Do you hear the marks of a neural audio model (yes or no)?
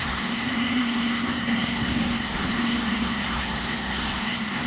yes